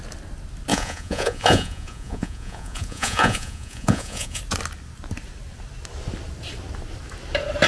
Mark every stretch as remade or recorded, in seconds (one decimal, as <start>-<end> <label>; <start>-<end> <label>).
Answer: 0.0-0.7 recorded; 0.7-4.4 remade; 4.4-7.7 recorded